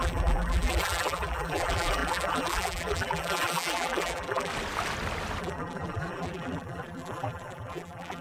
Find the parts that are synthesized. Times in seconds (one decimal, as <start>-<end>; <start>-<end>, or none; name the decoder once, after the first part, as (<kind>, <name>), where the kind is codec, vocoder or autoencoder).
0.0-4.5 (vocoder, BigVGAN v2); 5.4-8.2